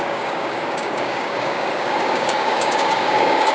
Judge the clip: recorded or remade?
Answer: remade